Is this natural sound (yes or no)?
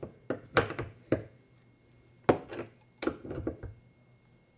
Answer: yes